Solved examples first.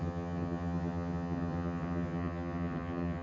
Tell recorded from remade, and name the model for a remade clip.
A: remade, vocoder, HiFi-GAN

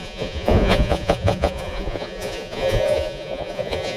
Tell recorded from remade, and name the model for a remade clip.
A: remade, vocoder, Vocos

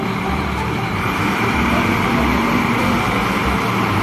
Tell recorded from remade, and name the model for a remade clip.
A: remade, vocoder, BigVGAN v2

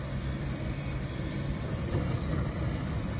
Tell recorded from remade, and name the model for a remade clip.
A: remade, vocoder, BigVGAN v2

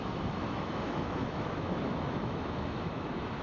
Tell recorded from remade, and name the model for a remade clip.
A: remade, autoencoder, DAC-VAE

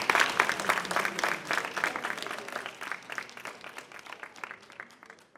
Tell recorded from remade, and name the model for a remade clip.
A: recorded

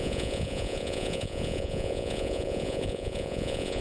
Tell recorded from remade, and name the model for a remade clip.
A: remade, vocoder, Vocos